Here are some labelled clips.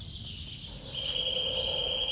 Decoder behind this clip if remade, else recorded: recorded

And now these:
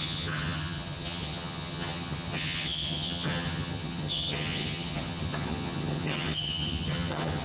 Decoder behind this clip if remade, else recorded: remade, vocoder, HiFi-GAN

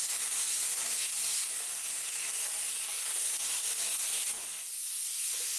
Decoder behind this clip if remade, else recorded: remade, codec, DAC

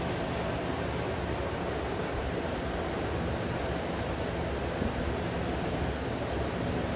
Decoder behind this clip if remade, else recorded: recorded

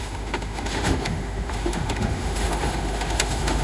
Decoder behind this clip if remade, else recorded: remade, autoencoder, DAC-VAE